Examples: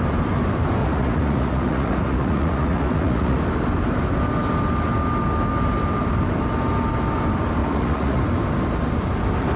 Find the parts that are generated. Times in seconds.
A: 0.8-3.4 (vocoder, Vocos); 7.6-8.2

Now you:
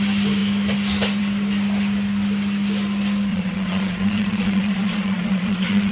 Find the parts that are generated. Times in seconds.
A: 3.3-5.9 (vocoder, Vocos)

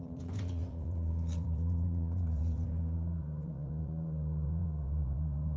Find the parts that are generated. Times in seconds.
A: 0.0-5.6 (vocoder, Vocos)